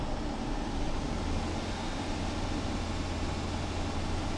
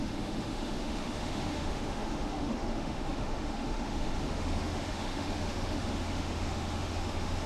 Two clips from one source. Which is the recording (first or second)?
first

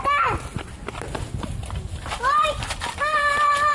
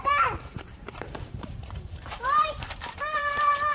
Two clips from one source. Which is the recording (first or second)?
first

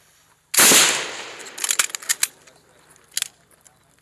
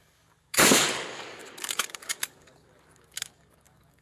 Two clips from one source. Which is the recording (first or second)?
first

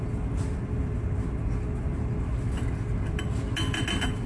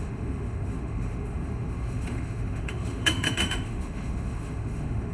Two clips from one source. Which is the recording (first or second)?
first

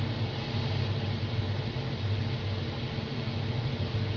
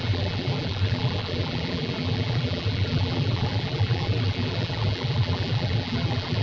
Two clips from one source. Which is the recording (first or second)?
first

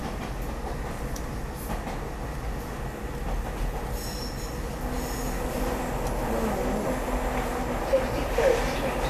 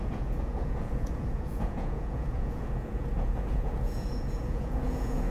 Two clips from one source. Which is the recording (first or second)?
first